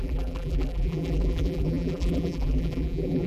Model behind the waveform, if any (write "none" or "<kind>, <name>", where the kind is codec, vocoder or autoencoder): vocoder, BigVGAN v2